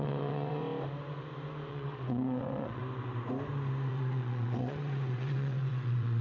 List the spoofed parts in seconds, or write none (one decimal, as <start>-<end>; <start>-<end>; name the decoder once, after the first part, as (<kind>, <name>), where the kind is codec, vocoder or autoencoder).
0.0-0.6 (vocoder, WaveNeXt); 1.7-2.8; 3.9-6.2